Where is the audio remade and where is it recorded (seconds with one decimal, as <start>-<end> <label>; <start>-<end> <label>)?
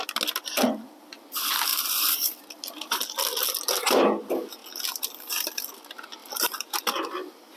0.0-1.7 recorded; 1.7-2.4 remade; 2.4-4.6 recorded; 4.6-5.5 remade; 5.5-6.2 recorded; 6.2-6.8 remade; 6.8-7.6 recorded